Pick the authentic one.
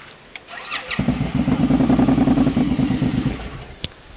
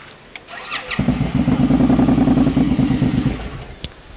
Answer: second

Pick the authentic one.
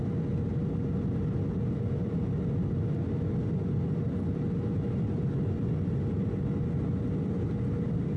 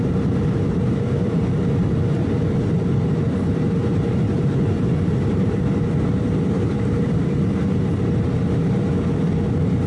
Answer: first